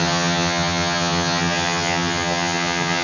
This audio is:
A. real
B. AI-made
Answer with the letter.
B